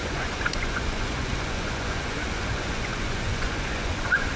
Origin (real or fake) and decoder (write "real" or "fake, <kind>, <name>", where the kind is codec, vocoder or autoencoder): fake, vocoder, Vocos